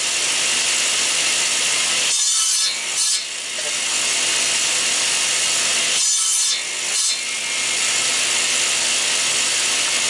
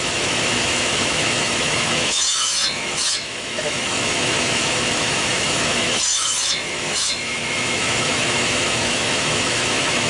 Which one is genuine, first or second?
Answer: first